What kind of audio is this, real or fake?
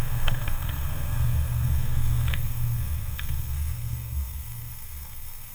fake